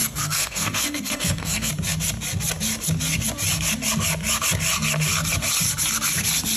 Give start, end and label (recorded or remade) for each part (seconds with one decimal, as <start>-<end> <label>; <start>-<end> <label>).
0.0-1.7 remade; 1.7-6.6 recorded